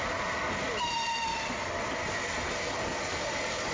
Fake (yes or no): yes